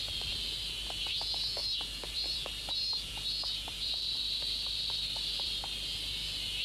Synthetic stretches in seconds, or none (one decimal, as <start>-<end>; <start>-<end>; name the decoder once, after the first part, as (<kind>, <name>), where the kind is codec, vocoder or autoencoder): 1.6-5.6 (vocoder, BigVGAN v2)